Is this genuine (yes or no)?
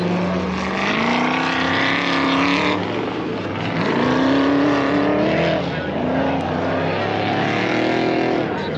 yes